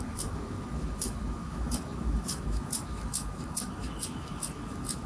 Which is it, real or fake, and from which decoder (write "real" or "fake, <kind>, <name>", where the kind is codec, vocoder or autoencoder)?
fake, autoencoder, DAC-VAE